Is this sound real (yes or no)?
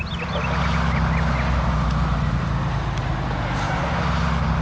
yes